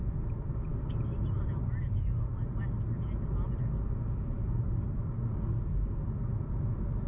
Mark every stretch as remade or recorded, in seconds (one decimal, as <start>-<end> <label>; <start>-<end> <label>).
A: 0.0-7.1 recorded

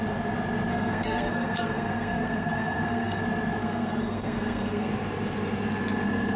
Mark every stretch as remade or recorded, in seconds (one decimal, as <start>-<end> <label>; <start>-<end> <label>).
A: 0.0-0.7 recorded; 0.7-3.2 remade; 3.2-3.6 recorded; 3.6-4.9 remade; 4.9-6.4 recorded

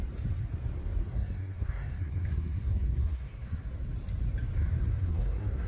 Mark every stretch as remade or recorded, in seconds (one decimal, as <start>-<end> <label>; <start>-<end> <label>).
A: 0.0-1.0 recorded; 1.0-3.5 remade; 3.5-4.8 recorded; 4.8-5.7 remade

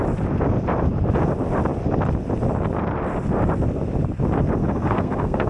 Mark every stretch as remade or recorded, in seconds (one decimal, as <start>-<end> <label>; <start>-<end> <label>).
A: 0.0-4.6 recorded; 4.6-5.5 remade

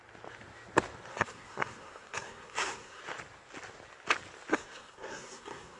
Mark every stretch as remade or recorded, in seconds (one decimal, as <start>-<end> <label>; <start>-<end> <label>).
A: 0.0-1.1 recorded; 1.1-3.0 remade; 3.0-4.5 recorded; 4.5-5.8 remade